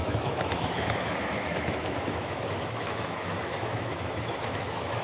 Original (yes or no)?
no